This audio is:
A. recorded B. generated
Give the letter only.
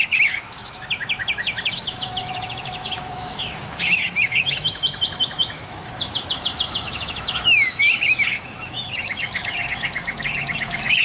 B